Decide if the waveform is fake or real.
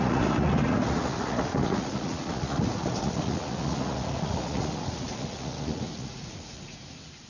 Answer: fake